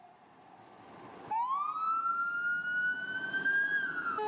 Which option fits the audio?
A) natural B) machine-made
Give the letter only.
A